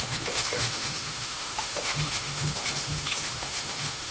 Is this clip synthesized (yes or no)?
yes